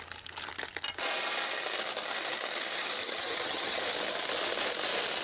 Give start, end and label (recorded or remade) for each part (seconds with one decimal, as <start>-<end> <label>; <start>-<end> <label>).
0.0-3.0 recorded; 3.0-3.8 remade; 3.8-5.2 recorded